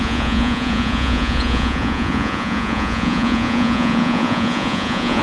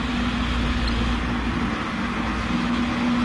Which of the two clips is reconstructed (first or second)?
first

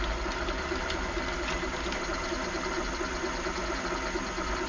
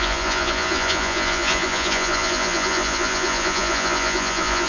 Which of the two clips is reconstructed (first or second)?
second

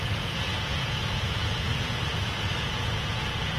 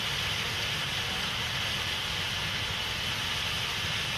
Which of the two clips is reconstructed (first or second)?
first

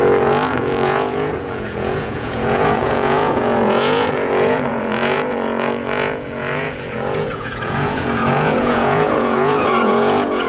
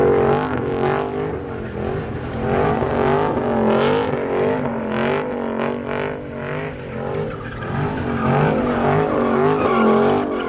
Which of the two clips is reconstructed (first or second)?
first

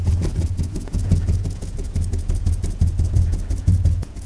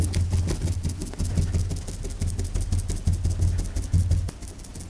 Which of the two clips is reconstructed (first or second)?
first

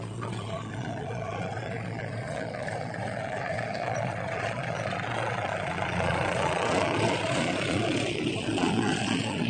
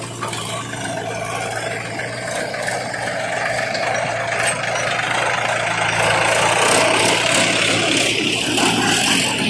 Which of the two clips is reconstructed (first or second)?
first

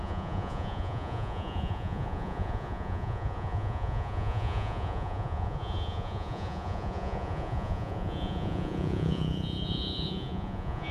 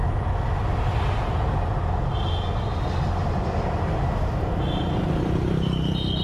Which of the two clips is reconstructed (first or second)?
first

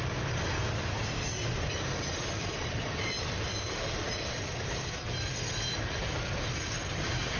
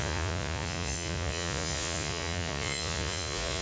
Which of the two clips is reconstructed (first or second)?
second